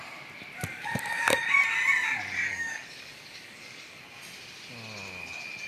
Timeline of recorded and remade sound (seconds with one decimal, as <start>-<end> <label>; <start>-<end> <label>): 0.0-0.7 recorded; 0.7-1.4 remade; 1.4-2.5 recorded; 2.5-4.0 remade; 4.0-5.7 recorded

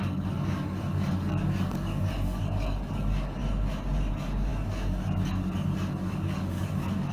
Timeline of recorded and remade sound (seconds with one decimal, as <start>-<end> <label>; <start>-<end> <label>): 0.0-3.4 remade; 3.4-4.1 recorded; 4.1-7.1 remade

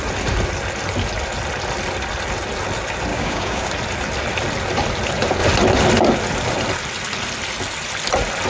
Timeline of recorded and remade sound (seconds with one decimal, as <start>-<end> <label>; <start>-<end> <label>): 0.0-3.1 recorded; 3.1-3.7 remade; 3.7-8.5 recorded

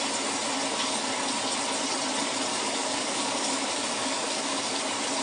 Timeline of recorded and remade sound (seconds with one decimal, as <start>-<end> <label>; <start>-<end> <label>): 0.0-2.5 recorded; 2.5-4.8 remade; 4.8-5.2 recorded

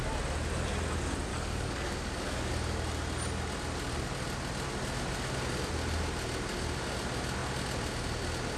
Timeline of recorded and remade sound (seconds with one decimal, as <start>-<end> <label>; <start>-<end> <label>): 0.0-1.3 recorded; 1.3-2.5 remade; 2.5-8.6 recorded

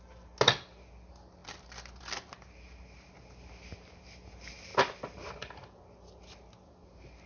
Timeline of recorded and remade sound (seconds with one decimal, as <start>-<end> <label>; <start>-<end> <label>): 0.0-7.3 recorded

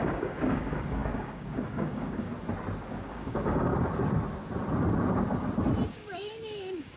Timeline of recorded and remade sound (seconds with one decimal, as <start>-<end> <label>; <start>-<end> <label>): 0.0-2.3 remade; 2.3-2.9 recorded; 2.9-3.7 remade; 3.7-5.9 recorded; 5.9-7.0 remade